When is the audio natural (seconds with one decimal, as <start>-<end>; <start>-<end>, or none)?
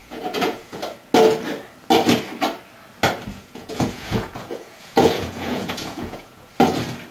0.8-3.3; 6.5-7.1